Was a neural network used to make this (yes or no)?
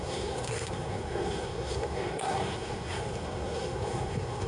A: yes